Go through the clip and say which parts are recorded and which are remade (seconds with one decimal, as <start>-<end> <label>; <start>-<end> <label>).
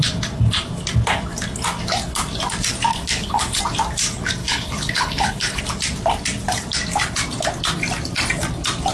0.0-2.9 recorded; 2.9-3.6 remade; 3.6-4.4 recorded; 4.4-5.6 remade; 5.6-8.9 recorded